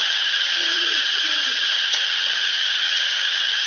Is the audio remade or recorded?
remade